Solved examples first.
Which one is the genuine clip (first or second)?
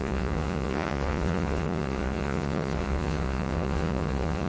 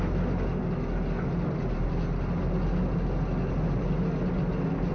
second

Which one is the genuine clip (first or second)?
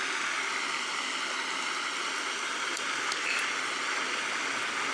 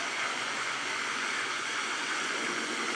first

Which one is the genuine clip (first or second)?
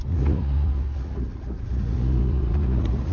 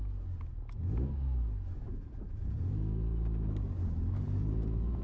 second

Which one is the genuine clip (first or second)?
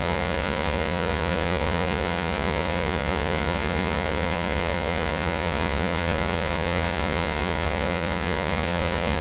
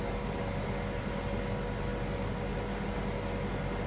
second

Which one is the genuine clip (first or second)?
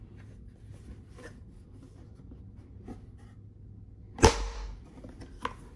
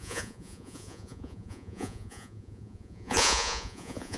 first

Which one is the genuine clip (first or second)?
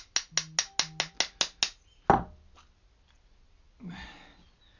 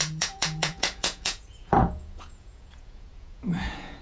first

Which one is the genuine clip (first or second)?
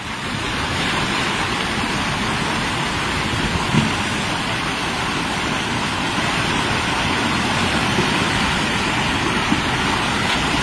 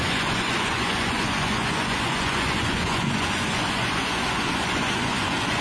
first